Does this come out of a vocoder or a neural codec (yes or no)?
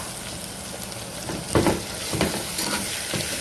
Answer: no